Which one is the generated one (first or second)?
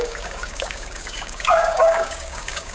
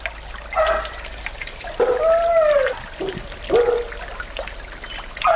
first